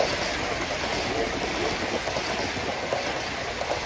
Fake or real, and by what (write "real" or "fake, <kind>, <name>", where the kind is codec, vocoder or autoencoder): real